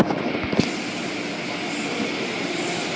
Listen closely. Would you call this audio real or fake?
real